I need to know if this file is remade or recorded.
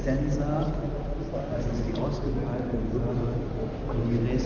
recorded